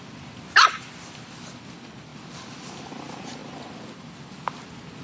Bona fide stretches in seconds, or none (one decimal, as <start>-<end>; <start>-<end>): 0.0-5.0